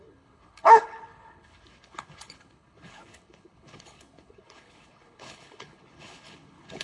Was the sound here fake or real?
fake